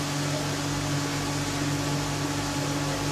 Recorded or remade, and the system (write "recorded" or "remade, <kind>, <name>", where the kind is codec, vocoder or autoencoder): recorded